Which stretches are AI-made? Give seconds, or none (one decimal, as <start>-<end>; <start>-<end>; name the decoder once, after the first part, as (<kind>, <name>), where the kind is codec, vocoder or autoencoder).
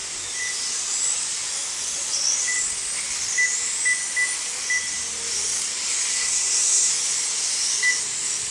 6.1-6.9 (codec, SNAC)